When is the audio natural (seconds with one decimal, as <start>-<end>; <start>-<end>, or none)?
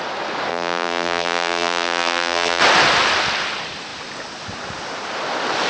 0.0-0.5; 2.6-5.7